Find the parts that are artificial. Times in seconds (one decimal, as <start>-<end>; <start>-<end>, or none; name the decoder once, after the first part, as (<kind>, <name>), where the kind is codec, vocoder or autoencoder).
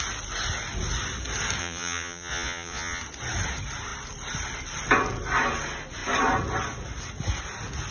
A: 1.6-3.0 (vocoder, Vocos)